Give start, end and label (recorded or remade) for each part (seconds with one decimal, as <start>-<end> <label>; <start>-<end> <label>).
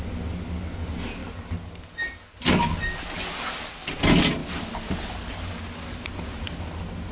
0.0-7.1 recorded